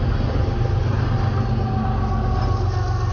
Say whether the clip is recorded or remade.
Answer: recorded